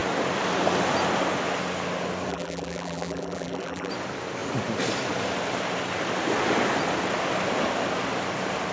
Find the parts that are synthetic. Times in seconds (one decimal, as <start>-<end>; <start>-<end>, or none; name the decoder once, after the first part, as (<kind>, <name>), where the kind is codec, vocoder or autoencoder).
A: 2.3-3.9 (vocoder, BigVGAN v2)

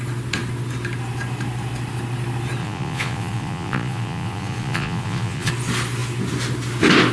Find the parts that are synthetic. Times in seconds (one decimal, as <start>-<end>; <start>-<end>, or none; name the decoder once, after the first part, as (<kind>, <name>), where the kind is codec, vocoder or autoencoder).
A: 2.6-5.5 (vocoder, Vocos)

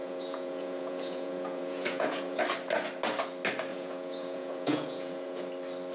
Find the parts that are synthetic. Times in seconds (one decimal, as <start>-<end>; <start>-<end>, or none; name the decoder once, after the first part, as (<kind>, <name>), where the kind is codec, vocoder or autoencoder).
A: 0.0-2.4 (vocoder, Vocos); 3.7-5.5